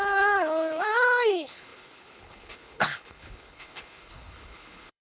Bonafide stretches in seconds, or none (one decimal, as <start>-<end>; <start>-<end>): none